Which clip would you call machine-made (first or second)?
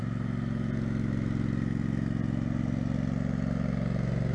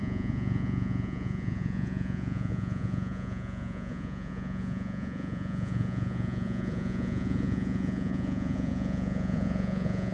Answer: second